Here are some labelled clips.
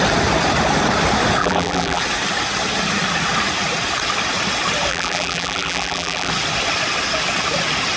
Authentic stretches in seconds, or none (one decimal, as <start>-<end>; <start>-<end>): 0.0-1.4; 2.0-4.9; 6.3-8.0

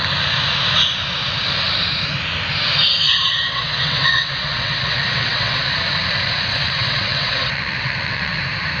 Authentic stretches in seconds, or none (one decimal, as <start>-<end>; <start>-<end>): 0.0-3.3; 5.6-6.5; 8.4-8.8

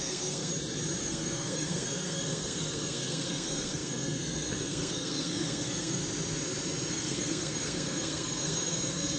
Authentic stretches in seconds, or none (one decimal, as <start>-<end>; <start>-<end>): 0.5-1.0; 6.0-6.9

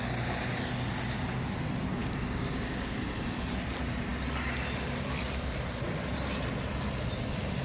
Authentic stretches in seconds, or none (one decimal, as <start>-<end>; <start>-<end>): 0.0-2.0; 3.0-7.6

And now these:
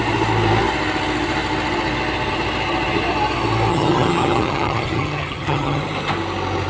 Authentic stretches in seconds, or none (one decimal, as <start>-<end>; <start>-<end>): 0.0-3.7; 5.8-6.7